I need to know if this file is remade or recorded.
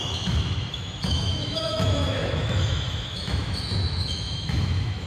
remade